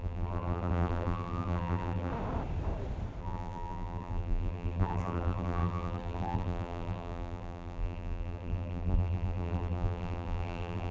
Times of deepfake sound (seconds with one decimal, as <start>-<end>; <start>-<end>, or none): 0.0-2.1; 3.2-10.9